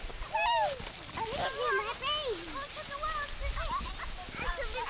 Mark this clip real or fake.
real